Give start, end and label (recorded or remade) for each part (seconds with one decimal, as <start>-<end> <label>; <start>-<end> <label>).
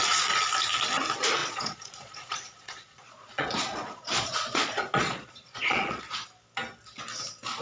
0.0-1.4 recorded; 1.4-6.0 remade; 6.0-7.6 recorded